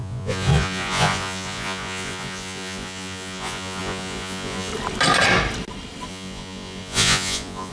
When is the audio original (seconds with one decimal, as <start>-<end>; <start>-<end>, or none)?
4.7-6.1